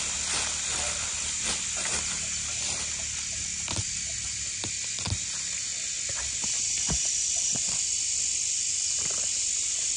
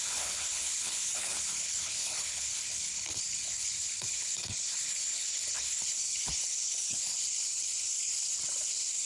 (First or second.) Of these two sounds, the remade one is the second